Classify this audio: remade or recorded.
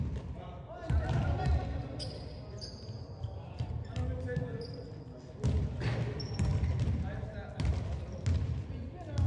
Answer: recorded